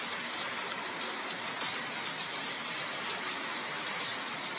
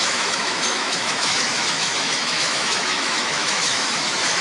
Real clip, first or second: first